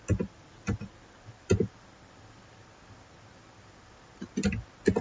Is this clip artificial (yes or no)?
no